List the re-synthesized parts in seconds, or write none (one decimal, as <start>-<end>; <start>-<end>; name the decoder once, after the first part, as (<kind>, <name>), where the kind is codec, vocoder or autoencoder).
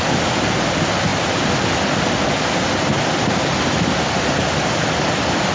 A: none